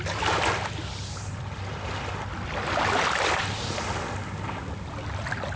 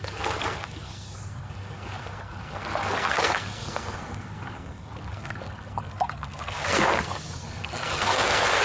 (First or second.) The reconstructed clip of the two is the second